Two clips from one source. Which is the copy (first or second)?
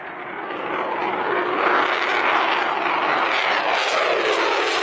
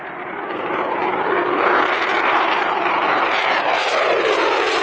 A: second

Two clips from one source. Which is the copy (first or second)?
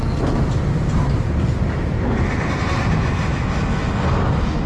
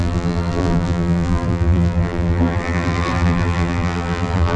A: second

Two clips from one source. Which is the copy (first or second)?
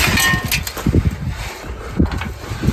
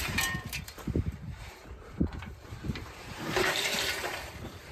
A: second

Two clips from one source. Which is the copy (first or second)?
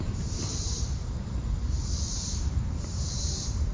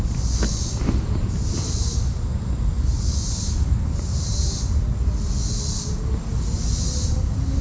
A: first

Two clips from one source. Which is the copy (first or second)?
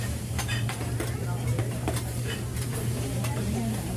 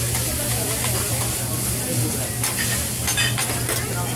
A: first